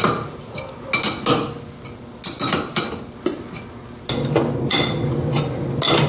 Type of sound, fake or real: real